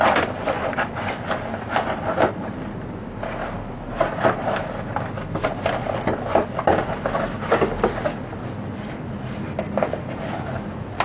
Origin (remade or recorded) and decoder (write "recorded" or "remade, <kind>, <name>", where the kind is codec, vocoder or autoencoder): recorded